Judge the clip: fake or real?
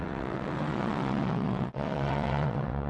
fake